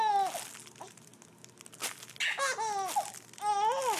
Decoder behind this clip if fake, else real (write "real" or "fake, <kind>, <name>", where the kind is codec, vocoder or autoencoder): real